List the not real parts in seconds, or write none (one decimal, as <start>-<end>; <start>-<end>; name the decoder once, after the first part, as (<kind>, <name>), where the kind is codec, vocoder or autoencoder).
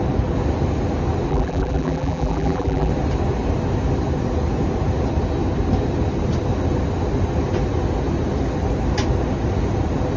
1.3-2.9 (vocoder, BigVGAN v2)